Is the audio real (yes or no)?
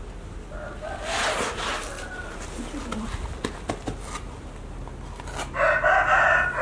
yes